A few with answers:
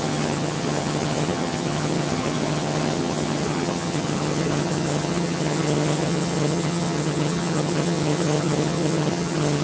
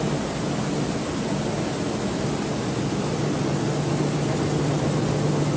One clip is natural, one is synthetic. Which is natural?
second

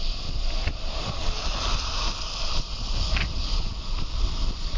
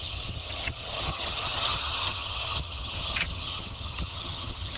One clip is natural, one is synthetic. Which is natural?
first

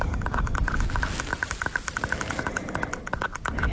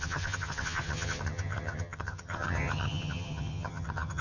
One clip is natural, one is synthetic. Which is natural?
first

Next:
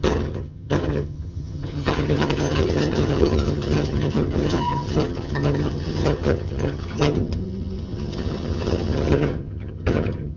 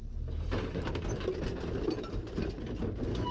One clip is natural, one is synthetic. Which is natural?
second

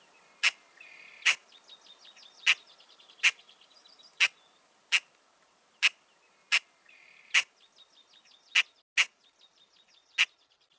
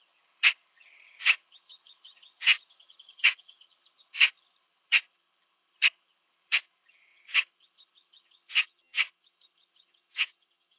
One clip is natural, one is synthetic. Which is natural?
first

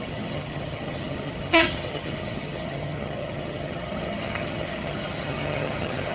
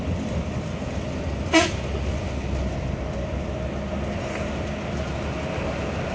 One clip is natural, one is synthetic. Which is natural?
second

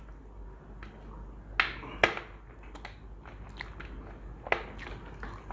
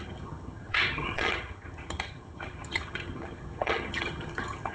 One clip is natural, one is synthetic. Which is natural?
first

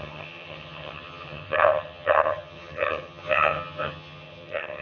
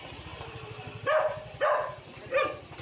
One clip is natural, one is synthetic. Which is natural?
second